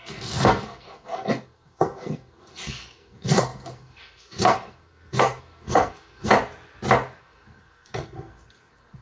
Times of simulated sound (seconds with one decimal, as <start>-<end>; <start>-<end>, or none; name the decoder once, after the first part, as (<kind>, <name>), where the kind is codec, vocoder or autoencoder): 0.0-6.3 (codec, SNAC); 7.2-9.0